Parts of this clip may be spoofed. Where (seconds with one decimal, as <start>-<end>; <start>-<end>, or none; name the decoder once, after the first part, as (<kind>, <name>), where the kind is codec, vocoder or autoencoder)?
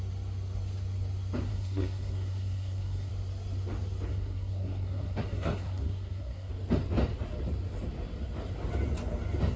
1.5-3.1 (codec, SNAC); 4.1-6.5